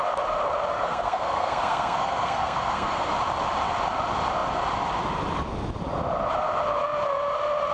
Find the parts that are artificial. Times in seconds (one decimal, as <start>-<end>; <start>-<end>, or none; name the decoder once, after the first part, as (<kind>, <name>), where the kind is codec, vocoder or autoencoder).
0.7-3.1 (codec, SNAC)